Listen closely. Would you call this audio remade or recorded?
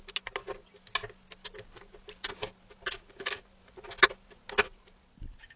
recorded